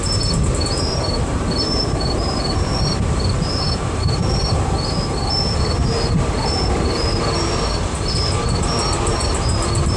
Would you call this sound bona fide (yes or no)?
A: no